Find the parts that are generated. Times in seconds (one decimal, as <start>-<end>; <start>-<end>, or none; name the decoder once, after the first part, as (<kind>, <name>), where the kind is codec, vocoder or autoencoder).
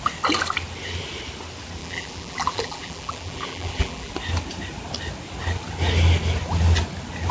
1.8-4.1 (vocoder, BigVGAN v2)